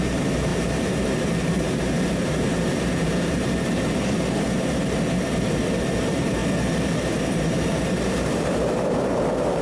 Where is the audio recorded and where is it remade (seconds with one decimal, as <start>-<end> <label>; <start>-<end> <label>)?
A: 0.0-6.4 remade; 6.4-7.0 recorded; 7.0-9.6 remade